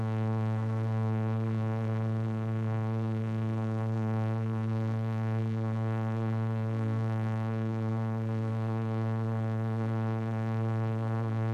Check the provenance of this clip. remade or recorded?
remade